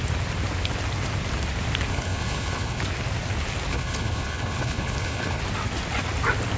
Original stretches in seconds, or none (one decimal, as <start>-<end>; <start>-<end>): 0.0-1.9; 2.8-3.7; 5.4-6.6